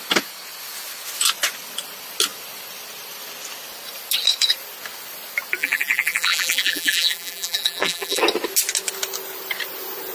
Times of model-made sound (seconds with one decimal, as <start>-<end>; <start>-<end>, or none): 5.6-8.2